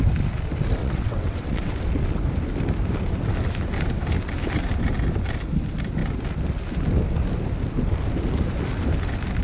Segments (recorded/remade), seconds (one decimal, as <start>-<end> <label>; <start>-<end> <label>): 0.0-0.8 recorded; 0.8-1.7 remade; 1.7-9.4 recorded